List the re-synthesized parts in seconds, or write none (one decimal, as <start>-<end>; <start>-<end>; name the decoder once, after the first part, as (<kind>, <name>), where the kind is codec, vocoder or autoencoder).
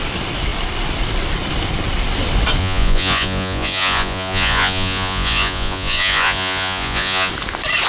2.6-7.3 (vocoder, Vocos)